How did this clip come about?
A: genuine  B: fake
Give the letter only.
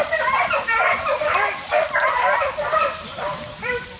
B